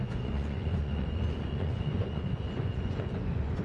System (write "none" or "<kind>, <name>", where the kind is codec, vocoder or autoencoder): vocoder, Vocos